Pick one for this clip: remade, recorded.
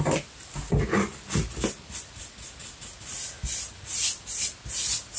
recorded